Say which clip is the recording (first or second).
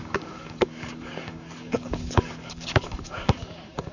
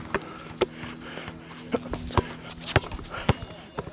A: second